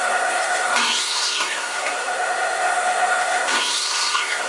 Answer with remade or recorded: remade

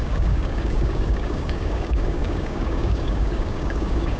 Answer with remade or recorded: remade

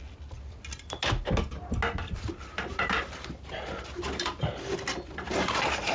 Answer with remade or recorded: recorded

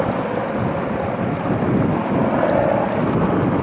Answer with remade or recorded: recorded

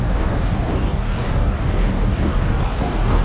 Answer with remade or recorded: remade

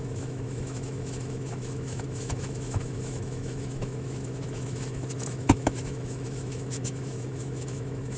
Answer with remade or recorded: remade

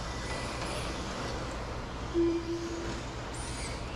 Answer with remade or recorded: recorded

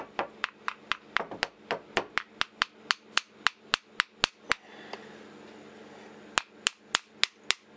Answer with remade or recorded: recorded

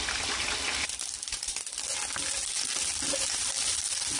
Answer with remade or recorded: recorded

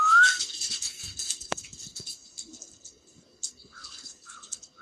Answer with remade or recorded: remade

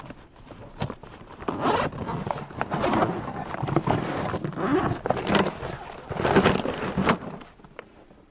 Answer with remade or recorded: recorded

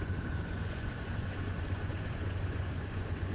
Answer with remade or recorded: remade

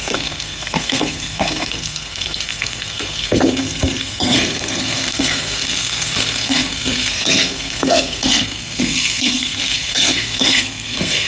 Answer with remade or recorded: remade